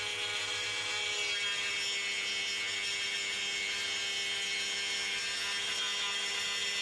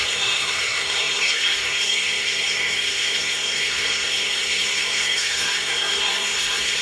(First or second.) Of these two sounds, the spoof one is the second